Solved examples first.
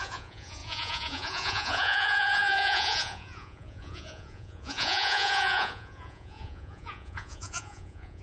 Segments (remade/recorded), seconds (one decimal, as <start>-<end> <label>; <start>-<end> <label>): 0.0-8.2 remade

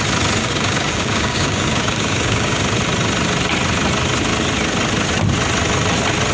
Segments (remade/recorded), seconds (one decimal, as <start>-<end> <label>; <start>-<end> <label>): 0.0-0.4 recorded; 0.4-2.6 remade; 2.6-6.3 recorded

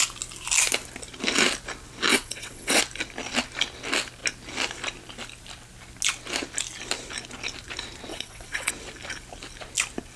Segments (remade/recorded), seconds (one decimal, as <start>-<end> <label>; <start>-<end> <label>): 0.0-2.1 recorded; 2.1-2.8 remade; 2.8-8.1 recorded; 8.1-8.7 remade; 8.7-10.2 recorded